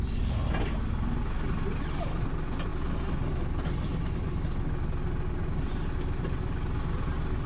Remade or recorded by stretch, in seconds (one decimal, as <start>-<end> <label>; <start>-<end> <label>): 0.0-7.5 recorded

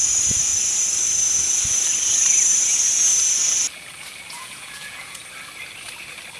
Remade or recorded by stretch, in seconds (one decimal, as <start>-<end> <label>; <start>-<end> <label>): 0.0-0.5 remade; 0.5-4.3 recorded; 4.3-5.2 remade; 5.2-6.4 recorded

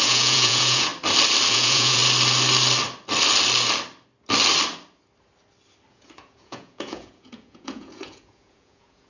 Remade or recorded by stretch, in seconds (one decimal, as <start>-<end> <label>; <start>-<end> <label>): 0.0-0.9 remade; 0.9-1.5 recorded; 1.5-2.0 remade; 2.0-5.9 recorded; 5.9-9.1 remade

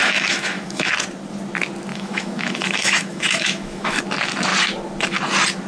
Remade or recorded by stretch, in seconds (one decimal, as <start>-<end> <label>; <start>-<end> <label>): 0.0-0.9 remade; 0.9-1.9 recorded; 1.9-4.0 remade; 4.0-5.7 recorded